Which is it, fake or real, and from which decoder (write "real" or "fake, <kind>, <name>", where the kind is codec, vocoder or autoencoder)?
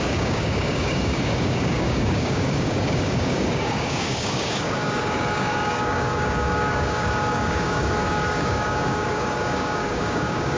fake, codec, DAC